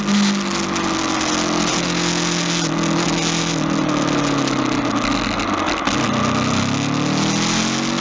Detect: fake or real real